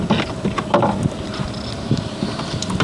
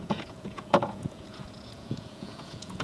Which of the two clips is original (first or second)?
first